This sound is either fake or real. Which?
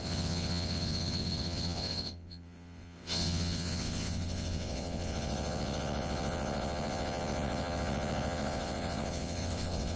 fake